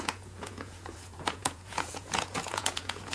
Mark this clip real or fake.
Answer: fake